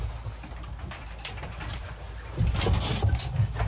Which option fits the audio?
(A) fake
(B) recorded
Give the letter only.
B